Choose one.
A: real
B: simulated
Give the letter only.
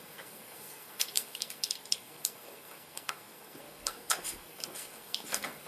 B